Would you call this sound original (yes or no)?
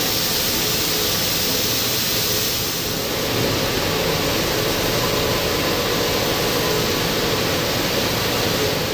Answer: yes